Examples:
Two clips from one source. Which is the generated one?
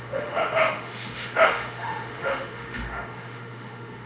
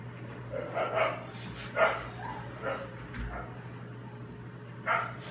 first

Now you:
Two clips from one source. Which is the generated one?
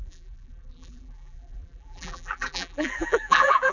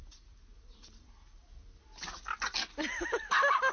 first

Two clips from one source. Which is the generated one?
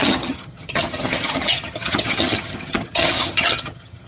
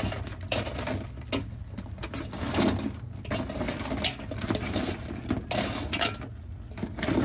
first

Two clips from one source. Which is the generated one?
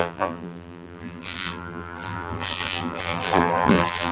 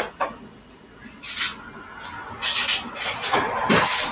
first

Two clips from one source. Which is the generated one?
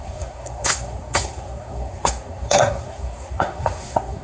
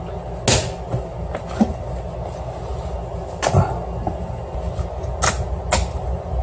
first